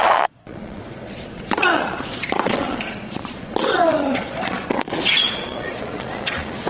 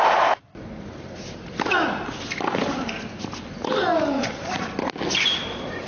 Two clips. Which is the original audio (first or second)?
second